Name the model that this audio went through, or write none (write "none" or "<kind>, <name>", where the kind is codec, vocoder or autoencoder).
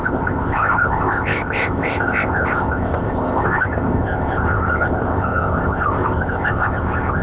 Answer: codec, ZipCodec